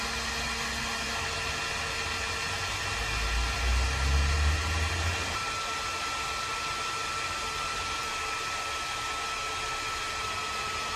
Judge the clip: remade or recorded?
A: recorded